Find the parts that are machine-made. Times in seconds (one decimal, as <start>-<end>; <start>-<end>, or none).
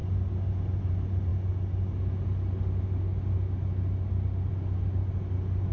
none